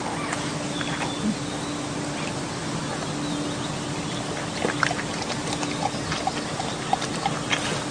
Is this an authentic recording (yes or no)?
yes